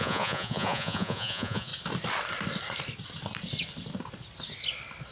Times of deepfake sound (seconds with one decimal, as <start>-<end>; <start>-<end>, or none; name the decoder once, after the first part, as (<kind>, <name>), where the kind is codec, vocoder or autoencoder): 0.0-1.7 (vocoder, Vocos)